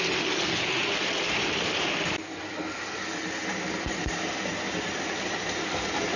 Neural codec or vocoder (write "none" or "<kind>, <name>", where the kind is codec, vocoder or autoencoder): none